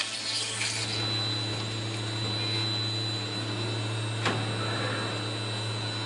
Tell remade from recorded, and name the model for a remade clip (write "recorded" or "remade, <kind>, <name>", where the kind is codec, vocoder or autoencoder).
recorded